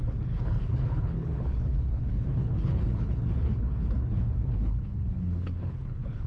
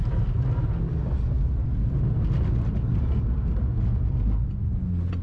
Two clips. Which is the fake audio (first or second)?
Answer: first